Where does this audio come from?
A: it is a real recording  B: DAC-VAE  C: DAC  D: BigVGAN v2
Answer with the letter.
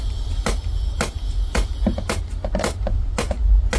A